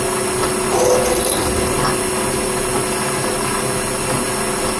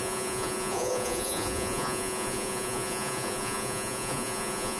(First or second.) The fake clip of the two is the second